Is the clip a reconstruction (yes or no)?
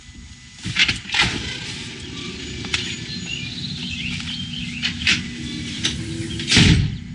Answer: no